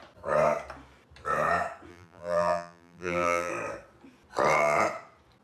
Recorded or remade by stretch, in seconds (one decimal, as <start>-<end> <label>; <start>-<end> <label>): 0.0-1.9 recorded; 1.9-3.5 remade; 3.5-5.4 recorded